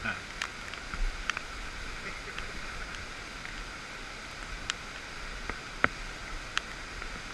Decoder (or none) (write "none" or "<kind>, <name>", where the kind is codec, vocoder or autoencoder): none